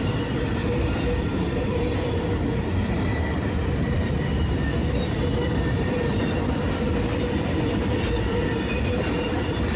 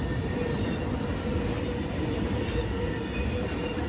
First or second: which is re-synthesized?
first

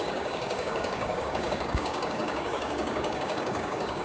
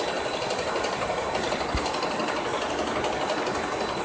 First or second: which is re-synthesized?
first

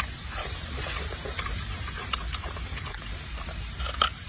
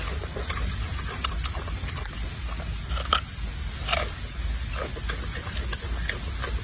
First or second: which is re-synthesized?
first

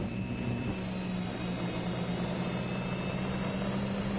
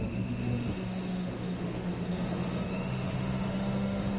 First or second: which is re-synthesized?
second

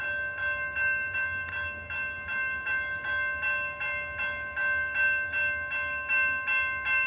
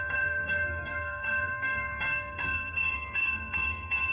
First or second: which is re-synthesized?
second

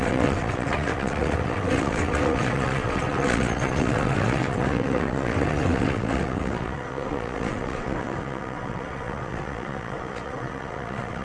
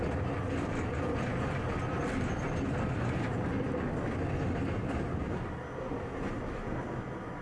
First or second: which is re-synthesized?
first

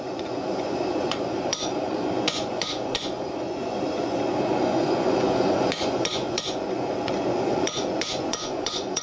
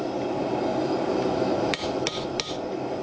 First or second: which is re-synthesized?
first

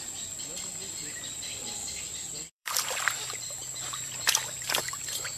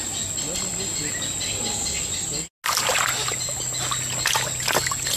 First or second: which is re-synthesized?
first